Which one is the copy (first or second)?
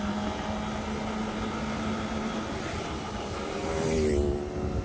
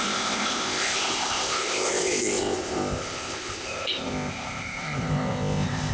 second